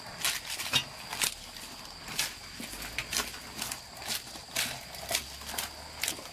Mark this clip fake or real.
real